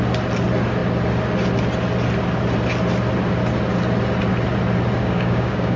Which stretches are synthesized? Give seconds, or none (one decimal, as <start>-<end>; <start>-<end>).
5.0-5.8